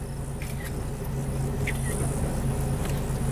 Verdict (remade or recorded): recorded